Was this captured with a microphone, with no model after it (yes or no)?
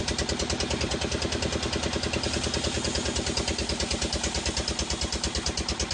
yes